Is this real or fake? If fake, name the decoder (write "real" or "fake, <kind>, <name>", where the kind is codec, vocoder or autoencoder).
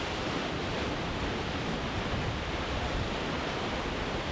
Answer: real